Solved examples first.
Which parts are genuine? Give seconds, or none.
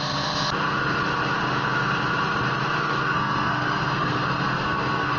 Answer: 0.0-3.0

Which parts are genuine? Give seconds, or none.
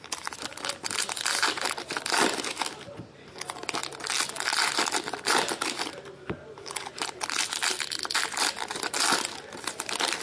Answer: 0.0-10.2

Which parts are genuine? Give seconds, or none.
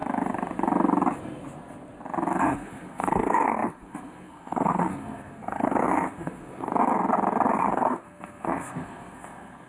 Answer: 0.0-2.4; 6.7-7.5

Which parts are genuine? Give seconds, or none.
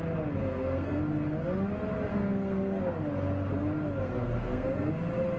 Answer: 0.0-0.4; 1.0-2.1; 2.8-4.0; 4.9-5.4